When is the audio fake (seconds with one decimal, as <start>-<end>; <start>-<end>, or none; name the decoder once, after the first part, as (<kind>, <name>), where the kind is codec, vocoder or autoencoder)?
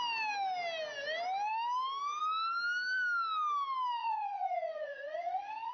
4.0-5.7 (vocoder, Vocos)